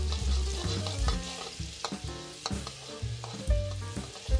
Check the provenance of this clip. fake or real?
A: real